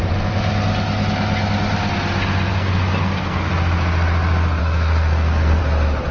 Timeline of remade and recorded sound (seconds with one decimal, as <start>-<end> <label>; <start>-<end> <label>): 0.0-2.5 recorded; 2.5-3.5 remade; 3.5-4.6 recorded; 4.6-5.6 remade; 5.6-6.1 recorded